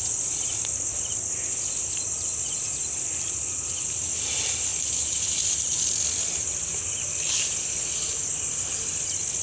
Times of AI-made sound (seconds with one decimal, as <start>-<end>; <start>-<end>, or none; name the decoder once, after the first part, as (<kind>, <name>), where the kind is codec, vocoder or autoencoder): none